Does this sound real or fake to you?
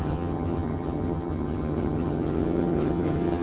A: fake